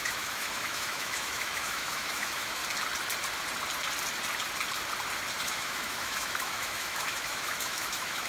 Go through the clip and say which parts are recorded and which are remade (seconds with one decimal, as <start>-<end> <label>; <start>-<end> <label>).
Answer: 0.0-2.6 remade; 2.6-5.4 recorded; 5.4-8.3 remade